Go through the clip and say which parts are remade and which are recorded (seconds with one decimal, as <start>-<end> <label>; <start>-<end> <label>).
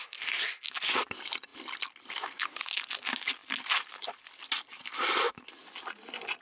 0.0-6.4 recorded